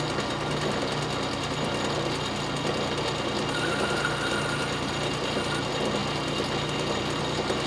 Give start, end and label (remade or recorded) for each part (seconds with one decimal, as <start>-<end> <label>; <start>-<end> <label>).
0.0-7.7 recorded